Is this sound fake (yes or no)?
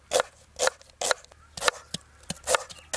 no